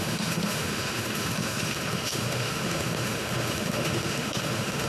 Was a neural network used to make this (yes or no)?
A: yes